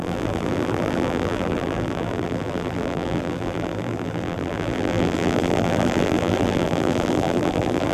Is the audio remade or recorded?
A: remade